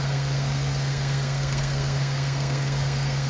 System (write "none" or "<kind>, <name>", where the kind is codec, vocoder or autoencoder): codec, SNAC